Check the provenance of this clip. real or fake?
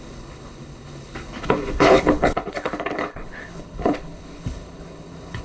fake